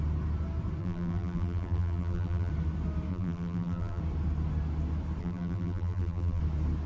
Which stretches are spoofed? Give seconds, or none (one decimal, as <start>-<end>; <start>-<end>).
0.8-2.5; 3.1-4.0; 5.2-6.4